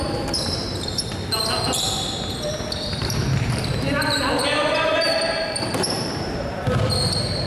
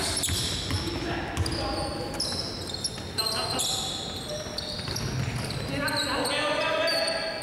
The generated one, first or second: first